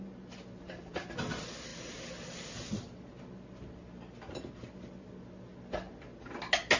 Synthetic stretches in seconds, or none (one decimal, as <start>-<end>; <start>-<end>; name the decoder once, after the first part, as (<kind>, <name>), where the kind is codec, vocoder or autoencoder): none

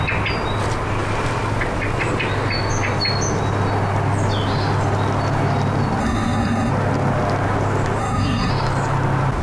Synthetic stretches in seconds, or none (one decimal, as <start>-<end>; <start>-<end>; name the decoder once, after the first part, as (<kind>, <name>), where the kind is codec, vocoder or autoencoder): 6.0-6.7 (codec, SNAC); 8.0-8.5